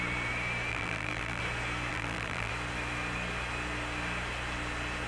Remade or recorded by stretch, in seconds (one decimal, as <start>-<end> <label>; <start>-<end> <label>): 0.0-0.7 recorded; 0.7-1.4 remade; 1.4-1.9 recorded; 1.9-2.5 remade; 2.5-5.1 recorded